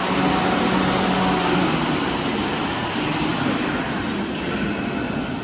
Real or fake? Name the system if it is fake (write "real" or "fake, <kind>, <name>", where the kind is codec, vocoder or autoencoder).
real